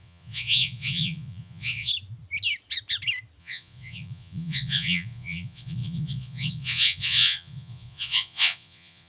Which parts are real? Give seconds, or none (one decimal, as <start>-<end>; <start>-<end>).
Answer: 1.9-3.4